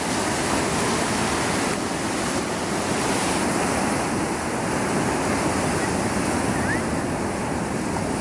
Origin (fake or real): real